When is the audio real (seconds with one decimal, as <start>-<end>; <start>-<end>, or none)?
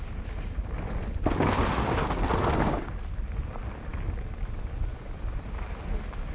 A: 0.0-6.3